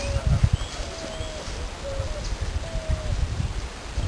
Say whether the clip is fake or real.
real